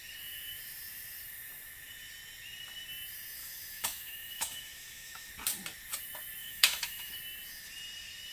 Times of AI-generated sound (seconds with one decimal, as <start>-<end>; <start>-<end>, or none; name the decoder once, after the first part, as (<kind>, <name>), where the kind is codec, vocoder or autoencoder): 3.4-5.3 (autoencoder, DAC-VAE); 6.4-7.1